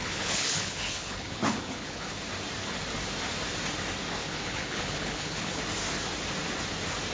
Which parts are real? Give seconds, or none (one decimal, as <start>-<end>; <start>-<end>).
2.2-4.2; 5.6-7.1